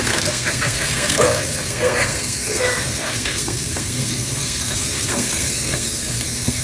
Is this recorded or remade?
remade